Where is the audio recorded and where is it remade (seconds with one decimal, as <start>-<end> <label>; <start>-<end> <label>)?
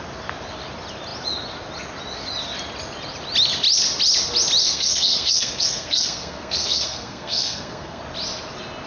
0.0-4.6 recorded; 4.6-8.0 remade; 8.0-8.9 recorded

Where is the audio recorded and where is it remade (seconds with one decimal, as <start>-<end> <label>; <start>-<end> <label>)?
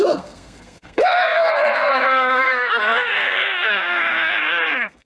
0.0-5.0 remade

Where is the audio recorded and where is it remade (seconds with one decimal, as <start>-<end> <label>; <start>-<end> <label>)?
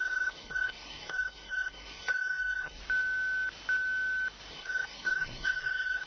0.0-2.8 remade; 2.8-4.5 recorded; 4.5-6.1 remade